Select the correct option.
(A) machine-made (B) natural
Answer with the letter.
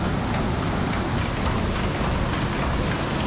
B